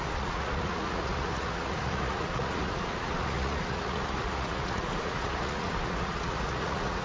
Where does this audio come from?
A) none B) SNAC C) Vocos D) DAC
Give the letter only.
C